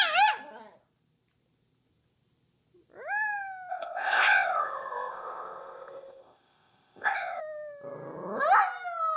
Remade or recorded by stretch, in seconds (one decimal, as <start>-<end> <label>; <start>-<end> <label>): 0.0-3.7 recorded; 3.7-7.4 remade; 7.4-9.2 recorded